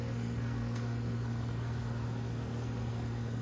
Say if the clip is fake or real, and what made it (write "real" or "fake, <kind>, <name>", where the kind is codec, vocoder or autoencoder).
fake, codec, SNAC